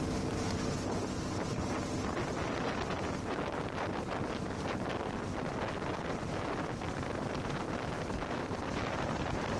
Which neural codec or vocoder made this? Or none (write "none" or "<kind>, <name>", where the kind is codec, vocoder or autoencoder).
none